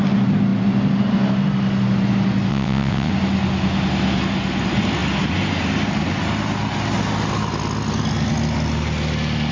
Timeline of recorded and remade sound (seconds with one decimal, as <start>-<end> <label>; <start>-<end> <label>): 0.0-2.5 recorded; 2.5-3.1 remade; 3.1-9.5 recorded